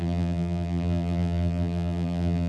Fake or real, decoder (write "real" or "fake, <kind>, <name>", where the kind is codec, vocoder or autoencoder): fake, vocoder, BigVGAN v2